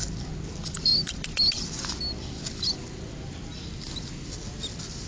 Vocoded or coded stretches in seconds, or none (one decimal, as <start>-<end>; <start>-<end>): none